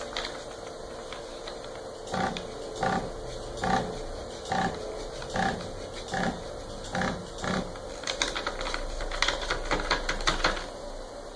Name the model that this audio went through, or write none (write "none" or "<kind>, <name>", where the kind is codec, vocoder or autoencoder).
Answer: none